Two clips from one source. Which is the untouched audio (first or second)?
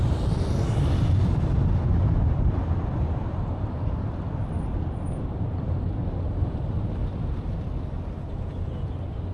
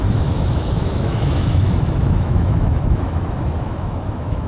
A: first